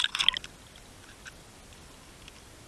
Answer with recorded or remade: recorded